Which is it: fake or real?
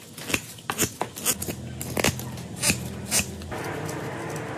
real